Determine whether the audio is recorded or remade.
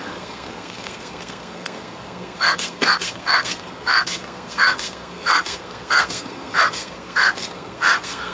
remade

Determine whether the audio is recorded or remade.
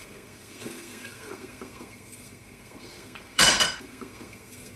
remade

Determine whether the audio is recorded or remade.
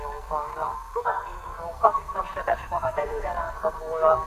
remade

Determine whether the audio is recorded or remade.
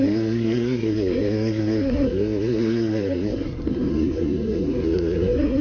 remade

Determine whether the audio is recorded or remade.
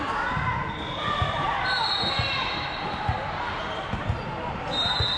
recorded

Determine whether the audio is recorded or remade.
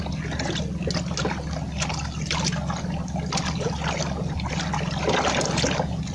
recorded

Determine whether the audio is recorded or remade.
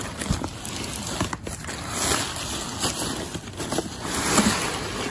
recorded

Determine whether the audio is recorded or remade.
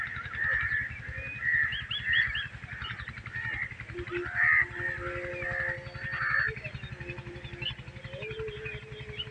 recorded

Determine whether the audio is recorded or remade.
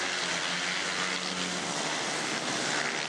recorded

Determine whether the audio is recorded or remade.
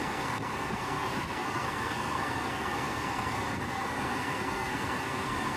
remade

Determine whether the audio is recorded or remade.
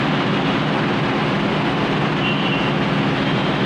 recorded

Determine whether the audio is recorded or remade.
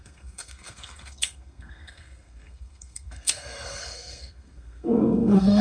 remade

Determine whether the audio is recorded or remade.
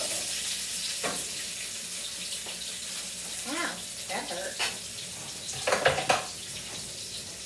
recorded